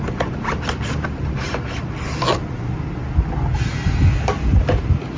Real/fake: real